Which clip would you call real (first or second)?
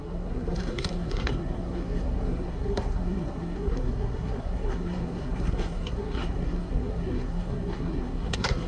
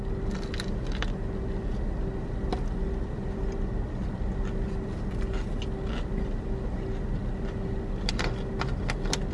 second